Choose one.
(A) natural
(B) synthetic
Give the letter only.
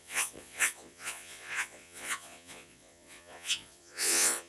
B